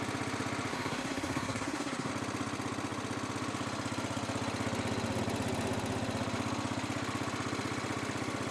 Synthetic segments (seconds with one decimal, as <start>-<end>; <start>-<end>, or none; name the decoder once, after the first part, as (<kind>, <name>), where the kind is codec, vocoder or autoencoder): 0.7-2.1 (codec, SNAC)

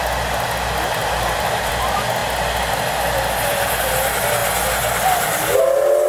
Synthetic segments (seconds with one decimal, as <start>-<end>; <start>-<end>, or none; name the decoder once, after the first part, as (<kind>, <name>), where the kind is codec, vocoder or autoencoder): 1.0-1.7 (vocoder, BigVGAN v2)

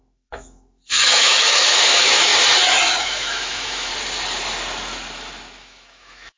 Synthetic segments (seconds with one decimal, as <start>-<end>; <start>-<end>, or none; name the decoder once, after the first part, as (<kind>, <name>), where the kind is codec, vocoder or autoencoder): 0.0-2.3 (autoencoder, DAC-VAE); 3.0-3.9; 5.6-6.4

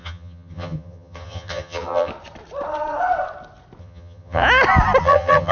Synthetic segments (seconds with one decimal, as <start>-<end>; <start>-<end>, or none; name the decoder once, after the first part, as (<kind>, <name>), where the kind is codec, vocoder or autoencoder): 0.0-2.1 (vocoder, HiFi-GAN); 3.8-4.4; 5.0-5.5